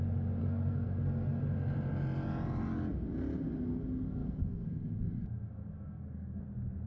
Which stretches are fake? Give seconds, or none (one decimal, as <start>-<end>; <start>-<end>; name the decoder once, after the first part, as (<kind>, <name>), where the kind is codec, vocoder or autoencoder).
0.4-1.4 (codec, SNAC); 4.2-6.4